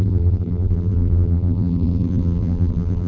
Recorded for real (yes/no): no